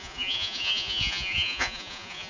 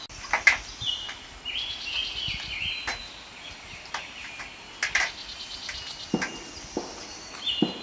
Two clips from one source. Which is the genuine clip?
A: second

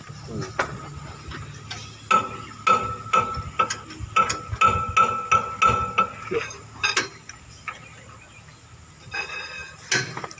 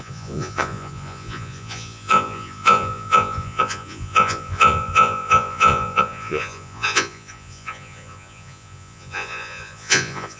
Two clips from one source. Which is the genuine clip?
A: first